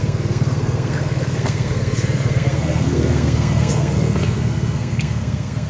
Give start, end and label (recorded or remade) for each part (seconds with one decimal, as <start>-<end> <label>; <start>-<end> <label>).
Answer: 0.0-5.7 remade